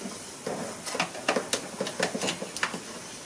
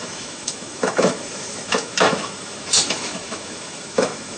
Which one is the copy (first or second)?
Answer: second